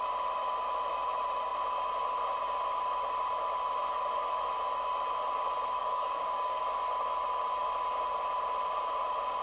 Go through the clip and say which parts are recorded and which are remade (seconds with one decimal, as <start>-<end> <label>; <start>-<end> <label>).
0.0-5.8 recorded; 5.8-6.6 remade; 6.6-9.4 recorded

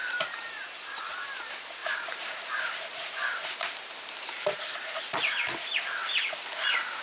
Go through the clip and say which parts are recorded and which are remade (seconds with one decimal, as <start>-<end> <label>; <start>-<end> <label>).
0.0-1.4 remade; 1.4-1.8 recorded; 1.8-5.8 remade; 5.8-7.0 recorded

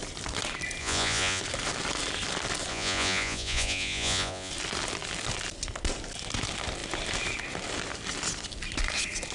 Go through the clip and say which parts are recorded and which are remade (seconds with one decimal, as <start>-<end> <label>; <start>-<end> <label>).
0.0-0.8 recorded; 0.8-1.4 remade; 1.4-2.7 recorded; 2.7-4.5 remade; 4.5-9.3 recorded